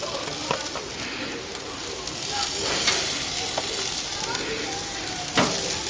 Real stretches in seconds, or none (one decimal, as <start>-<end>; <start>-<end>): 0.0-5.9